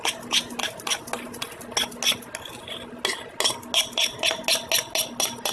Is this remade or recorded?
recorded